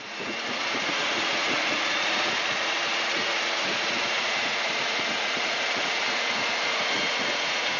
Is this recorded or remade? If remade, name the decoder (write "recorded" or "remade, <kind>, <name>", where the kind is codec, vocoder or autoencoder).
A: remade, vocoder, Vocos